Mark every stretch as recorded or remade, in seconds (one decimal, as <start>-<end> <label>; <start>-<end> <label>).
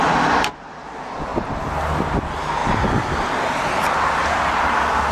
0.0-5.1 recorded